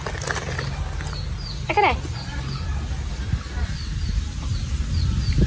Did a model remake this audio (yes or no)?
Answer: no